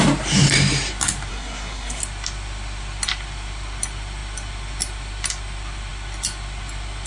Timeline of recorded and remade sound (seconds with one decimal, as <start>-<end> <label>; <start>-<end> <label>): 0.0-1.3 recorded; 1.3-2.0 remade; 2.0-7.1 recorded